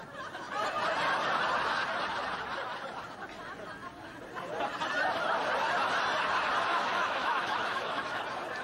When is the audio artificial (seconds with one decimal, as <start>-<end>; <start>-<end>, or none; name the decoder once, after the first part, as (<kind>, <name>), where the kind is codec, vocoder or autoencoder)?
6.7-8.2 (autoencoder, DAC-VAE)